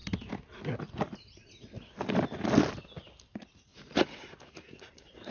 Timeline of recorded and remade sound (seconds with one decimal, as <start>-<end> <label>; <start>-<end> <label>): 0.0-3.7 recorded; 3.7-5.3 remade